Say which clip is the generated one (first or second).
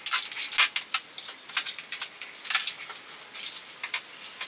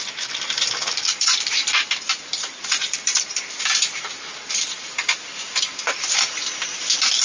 second